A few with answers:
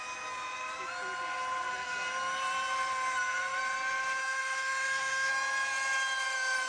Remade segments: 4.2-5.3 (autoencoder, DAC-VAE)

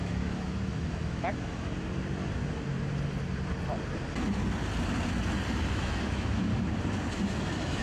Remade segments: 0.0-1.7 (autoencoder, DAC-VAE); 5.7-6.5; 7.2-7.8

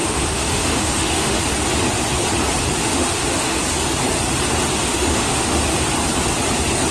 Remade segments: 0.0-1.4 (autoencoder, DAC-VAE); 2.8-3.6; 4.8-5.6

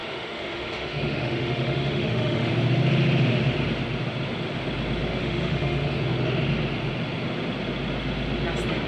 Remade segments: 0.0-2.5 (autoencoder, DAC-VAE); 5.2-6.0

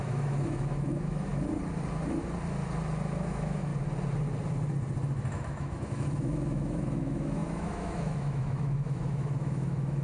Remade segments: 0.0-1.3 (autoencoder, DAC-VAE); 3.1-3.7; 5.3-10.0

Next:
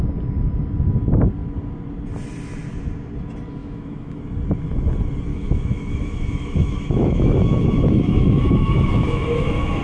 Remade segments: 3.6-4.2 (autoencoder, DAC-VAE); 5.3-9.8

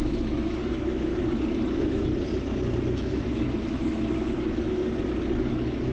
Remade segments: 0.0-1.1 (autoencoder, DAC-VAE); 1.7-2.1; 2.9-4.8; 5.5-5.9